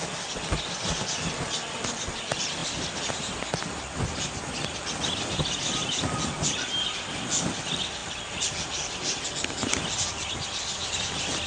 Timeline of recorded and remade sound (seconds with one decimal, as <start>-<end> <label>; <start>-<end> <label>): 0.0-11.5 recorded